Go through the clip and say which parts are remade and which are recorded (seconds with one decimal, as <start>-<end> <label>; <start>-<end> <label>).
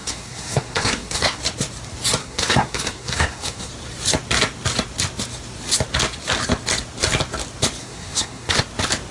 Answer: 0.0-1.4 remade; 1.4-2.2 recorded; 2.2-3.7 remade; 3.7-7.8 recorded; 7.8-8.6 remade; 8.6-9.1 recorded